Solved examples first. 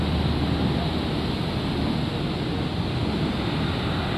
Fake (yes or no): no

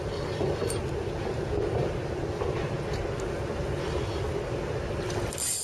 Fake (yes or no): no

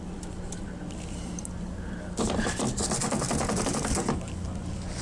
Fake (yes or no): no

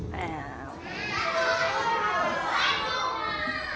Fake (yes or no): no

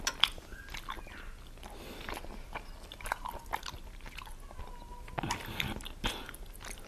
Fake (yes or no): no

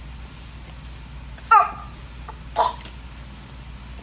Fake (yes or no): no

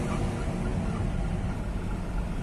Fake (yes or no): no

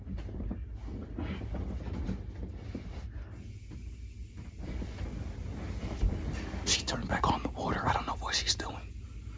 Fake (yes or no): no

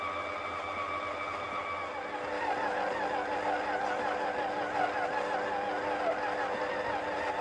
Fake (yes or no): no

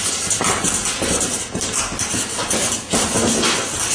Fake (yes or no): no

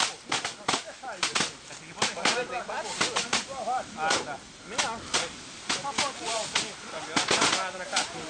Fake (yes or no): no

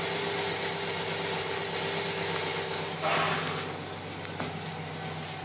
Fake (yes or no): no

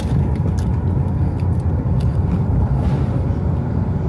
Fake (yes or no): no